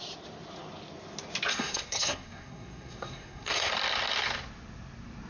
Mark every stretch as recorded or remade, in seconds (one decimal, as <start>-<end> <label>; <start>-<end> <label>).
0.0-1.5 recorded; 1.5-3.7 remade; 3.7-5.3 recorded